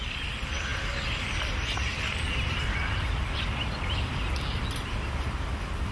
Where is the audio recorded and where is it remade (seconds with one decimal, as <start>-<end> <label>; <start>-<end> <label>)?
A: 0.0-5.9 recorded